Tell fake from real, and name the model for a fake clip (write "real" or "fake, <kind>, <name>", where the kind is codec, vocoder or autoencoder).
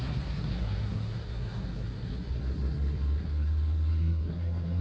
fake, codec, SNAC